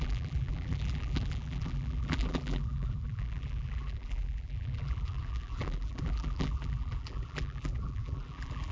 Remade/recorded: remade